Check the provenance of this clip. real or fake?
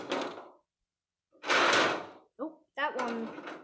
real